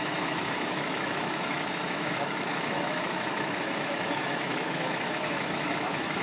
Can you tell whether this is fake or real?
fake